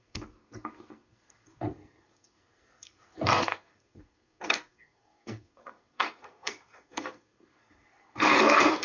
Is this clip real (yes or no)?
no